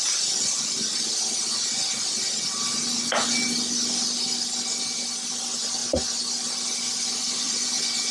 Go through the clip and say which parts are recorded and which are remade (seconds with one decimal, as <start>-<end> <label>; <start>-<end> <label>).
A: 0.0-7.2 recorded; 7.2-8.1 remade